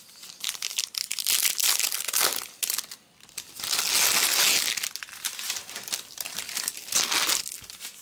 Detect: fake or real real